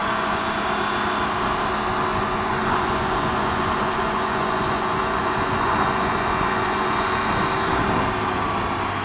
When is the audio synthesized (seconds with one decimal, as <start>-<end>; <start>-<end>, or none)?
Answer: 0.0-0.5; 2.1-7.2